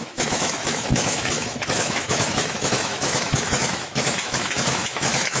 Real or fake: fake